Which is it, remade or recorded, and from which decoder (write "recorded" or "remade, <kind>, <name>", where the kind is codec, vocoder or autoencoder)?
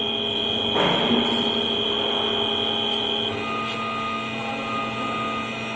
recorded